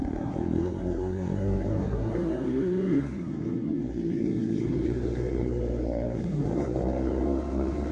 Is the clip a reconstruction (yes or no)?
yes